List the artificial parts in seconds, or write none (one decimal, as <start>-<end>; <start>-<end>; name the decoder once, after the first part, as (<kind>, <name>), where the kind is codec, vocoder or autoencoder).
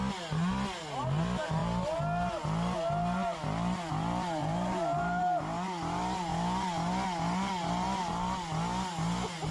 4.4-5.2 (vocoder, BigVGAN v2)